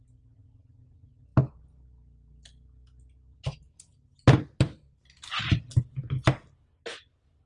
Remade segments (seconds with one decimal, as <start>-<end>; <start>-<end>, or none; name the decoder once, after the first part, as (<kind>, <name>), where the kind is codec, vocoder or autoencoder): none